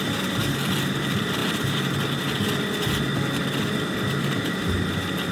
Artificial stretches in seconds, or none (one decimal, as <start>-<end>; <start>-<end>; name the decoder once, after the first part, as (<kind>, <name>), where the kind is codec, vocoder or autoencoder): none